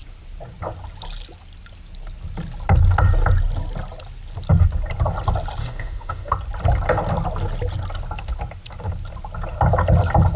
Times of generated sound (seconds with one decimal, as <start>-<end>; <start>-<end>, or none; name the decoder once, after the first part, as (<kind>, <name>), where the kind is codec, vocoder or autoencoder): 5.6-6.3 (autoencoder, DAC-VAE)